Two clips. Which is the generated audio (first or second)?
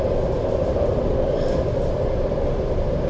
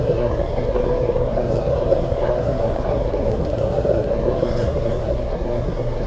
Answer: second